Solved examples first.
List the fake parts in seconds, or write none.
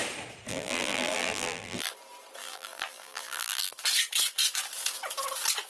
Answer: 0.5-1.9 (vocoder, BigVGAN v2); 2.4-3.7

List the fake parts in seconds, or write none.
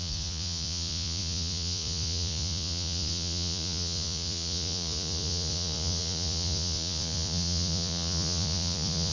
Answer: 0.0-9.1 (vocoder, Vocos)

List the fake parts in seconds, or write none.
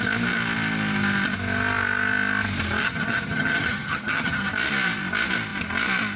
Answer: 2.8-4.5 (vocoder, HiFi-GAN)